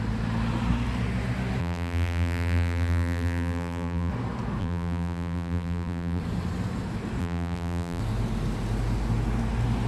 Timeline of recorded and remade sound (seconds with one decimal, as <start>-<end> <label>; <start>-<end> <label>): 0.0-1.6 recorded; 1.6-4.1 remade; 4.1-4.6 recorded; 4.6-6.2 remade; 6.2-7.2 recorded; 7.2-8.0 remade; 8.0-9.9 recorded